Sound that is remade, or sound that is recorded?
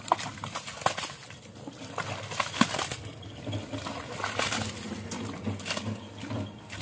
recorded